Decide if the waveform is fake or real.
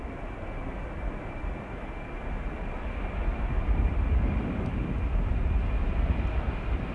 real